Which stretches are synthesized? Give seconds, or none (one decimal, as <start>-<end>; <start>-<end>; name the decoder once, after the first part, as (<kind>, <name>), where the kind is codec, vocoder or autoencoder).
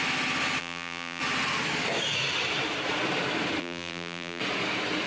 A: 0.6-1.2 (vocoder, BigVGAN v2); 3.6-4.4